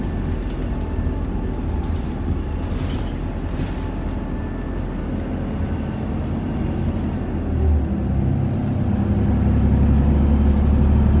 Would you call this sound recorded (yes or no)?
yes